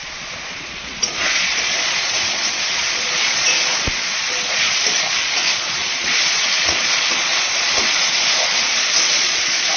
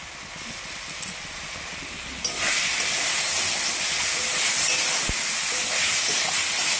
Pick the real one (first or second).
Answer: second